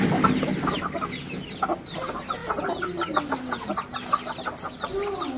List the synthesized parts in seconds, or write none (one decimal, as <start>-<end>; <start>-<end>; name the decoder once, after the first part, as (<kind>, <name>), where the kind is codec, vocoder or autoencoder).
none